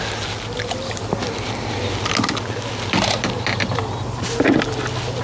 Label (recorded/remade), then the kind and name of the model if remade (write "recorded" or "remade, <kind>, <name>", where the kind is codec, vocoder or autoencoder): recorded